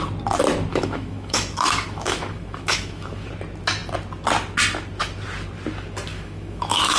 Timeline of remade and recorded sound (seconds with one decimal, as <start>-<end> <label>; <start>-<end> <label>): 0.0-0.7 recorded; 0.7-3.3 remade; 3.3-6.1 recorded; 6.1-7.0 remade